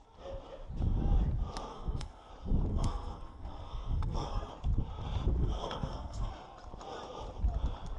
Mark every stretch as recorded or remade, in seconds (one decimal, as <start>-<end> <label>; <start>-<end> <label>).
0.0-1.7 recorded; 1.7-2.3 remade; 2.3-2.7 recorded; 2.7-4.5 remade; 4.5-5.4 recorded; 5.4-6.3 remade; 6.3-8.0 recorded